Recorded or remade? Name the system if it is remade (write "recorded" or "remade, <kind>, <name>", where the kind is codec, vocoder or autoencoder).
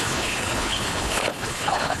remade, codec, HILCodec